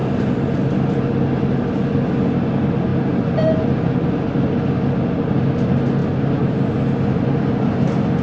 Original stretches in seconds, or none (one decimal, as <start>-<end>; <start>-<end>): 0.0-8.2